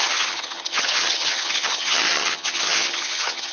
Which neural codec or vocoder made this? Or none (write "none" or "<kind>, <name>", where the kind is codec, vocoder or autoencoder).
vocoder, HiFi-GAN